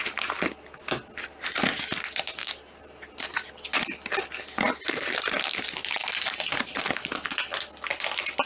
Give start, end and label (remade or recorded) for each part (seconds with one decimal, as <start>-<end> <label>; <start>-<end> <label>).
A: 0.0-2.4 recorded; 2.4-3.1 remade; 3.1-6.0 recorded; 6.0-7.1 remade; 7.1-8.5 recorded